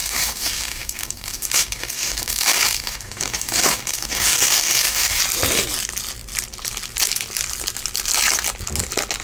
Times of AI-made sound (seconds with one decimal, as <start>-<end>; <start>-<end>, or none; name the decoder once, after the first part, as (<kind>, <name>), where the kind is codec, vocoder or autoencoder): 0.0-5.2 (codec, DAC)